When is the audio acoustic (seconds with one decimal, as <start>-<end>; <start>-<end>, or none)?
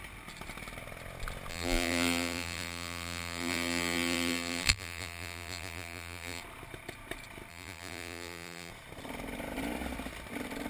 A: 0.0-1.5; 6.4-7.5; 8.7-10.7